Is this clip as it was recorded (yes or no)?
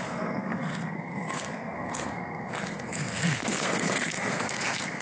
no